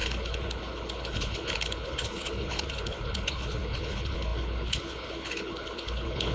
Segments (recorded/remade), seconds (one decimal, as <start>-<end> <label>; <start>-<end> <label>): 0.0-6.3 remade